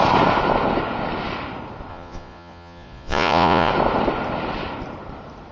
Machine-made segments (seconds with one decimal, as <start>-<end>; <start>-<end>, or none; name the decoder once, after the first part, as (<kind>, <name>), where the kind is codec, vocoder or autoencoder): 1.9-3.7 (vocoder, Vocos)